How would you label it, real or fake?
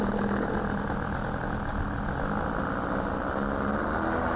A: real